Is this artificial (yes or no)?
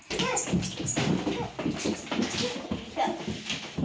no